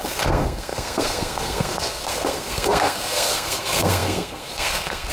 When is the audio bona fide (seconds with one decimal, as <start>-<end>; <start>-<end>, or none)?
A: none